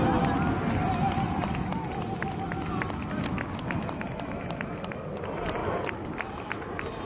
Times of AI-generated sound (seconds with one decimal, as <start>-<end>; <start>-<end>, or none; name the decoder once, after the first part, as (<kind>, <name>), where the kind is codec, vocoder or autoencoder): none

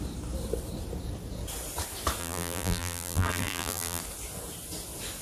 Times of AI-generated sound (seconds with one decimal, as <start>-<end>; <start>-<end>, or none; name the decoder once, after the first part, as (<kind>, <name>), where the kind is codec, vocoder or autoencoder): 2.2-4.0 (vocoder, BigVGAN v2)

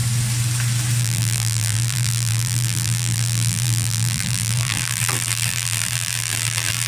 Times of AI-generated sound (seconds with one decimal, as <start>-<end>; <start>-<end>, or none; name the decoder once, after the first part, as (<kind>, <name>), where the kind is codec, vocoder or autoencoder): 1.0-6.9 (vocoder, BigVGAN v2)

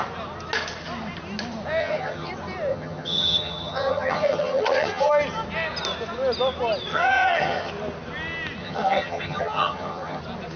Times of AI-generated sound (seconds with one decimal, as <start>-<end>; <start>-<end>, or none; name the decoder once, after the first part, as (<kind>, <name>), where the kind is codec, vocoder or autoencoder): 1.8-2.3 (vocoder, HiFi-GAN); 2.7-5.1; 6.9-7.7; 8.6-10.2